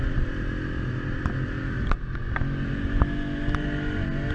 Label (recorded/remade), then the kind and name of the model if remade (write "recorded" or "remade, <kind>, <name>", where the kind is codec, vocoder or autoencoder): recorded